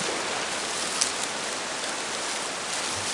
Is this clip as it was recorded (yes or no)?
yes